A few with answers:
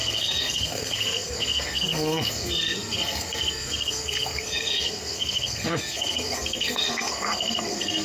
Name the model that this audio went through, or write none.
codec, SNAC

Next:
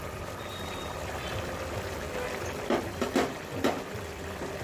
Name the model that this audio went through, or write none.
vocoder, BigVGAN v2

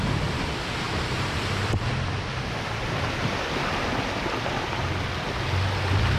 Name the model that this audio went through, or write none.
none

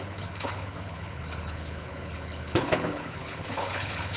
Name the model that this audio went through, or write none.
codec, HILCodec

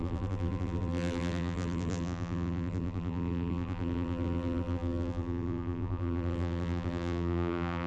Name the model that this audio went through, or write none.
vocoder, BigVGAN v2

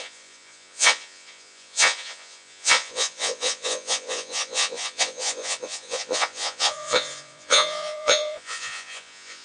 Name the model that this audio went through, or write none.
vocoder, Vocos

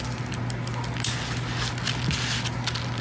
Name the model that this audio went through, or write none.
none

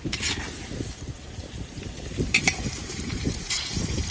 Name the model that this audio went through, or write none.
vocoder, BigVGAN v2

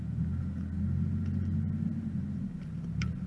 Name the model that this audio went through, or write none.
none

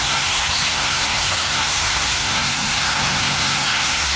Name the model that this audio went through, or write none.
codec, SNAC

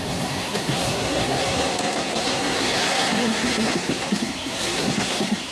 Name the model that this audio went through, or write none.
codec, SNAC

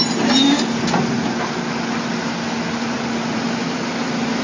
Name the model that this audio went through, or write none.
none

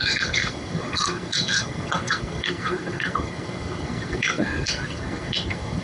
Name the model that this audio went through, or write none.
codec, SNAC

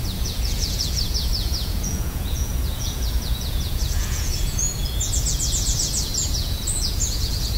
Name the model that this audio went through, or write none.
vocoder, Vocos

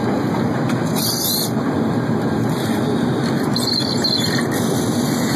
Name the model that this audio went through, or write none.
none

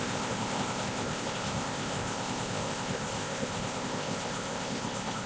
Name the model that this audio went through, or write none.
codec, ZipCodec